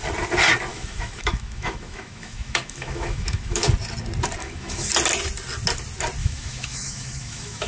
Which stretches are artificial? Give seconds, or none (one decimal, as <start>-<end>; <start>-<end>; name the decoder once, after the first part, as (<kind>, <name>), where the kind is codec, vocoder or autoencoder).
0.7-3.7 (autoencoder, DAC-VAE); 4.4-4.9; 6.2-7.7